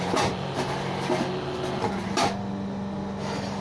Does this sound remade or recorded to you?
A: recorded